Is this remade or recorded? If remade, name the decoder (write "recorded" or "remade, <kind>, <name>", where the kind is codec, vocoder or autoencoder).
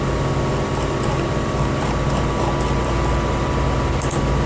recorded